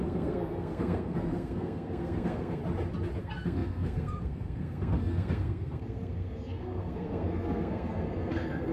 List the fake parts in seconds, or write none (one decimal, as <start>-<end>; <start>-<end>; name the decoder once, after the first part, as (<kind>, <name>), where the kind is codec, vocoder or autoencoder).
0.0-2.6 (codec, SNAC); 3.2-8.7